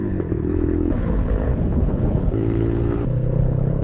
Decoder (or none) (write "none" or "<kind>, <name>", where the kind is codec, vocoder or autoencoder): codec, HILCodec